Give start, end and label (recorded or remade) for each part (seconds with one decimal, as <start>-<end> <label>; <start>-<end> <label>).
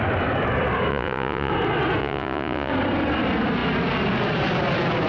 0.0-0.9 recorded; 0.9-1.5 remade; 1.5-2.0 recorded; 2.0-2.7 remade; 2.7-5.1 recorded